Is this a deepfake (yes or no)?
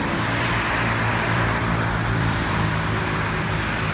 yes